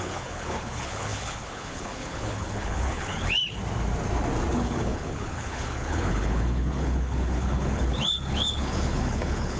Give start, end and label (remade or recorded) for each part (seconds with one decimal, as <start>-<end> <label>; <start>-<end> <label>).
0.0-3.6 remade; 3.6-4.5 recorded; 4.5-9.6 remade